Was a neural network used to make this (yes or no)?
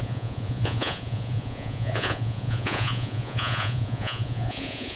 yes